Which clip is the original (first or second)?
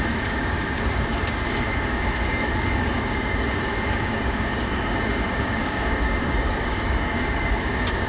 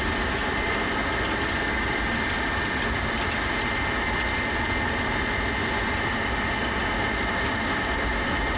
second